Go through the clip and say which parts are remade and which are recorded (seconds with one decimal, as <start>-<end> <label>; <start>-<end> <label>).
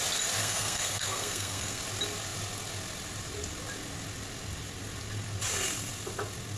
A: 0.0-0.4 recorded; 0.4-1.8 remade; 1.8-6.6 recorded